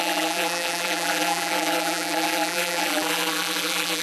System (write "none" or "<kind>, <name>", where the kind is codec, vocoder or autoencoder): vocoder, BigVGAN v2